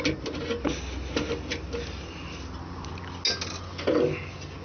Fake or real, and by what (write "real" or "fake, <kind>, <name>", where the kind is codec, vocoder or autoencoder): real